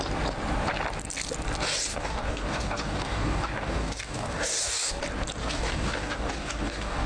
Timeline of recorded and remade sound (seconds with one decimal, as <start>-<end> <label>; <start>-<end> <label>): 0.0-1.9 recorded; 1.9-5.0 remade; 5.0-5.4 recorded; 5.4-7.1 remade